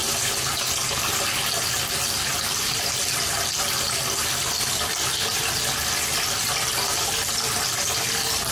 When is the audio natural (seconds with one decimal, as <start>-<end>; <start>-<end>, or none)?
0.0-8.5